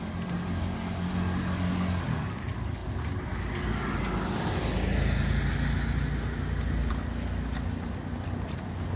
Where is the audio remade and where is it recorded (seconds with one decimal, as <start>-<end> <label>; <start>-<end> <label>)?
0.0-9.0 recorded